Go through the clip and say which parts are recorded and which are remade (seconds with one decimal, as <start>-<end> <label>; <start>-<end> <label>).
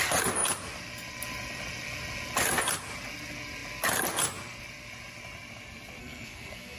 0.0-6.0 recorded; 6.0-6.8 remade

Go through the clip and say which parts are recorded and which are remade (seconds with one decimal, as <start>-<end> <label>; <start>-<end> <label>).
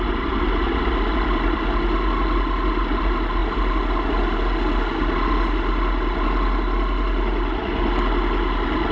0.0-8.9 recorded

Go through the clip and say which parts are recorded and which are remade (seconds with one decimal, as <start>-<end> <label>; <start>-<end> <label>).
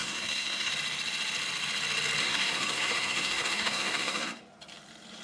0.0-0.7 remade; 0.7-2.2 recorded; 2.2-4.4 remade; 4.4-5.2 recorded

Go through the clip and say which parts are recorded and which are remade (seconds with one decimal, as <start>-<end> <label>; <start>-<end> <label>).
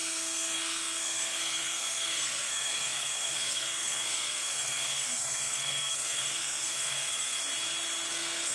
0.0-7.4 remade; 7.4-8.1 recorded; 8.1-8.5 remade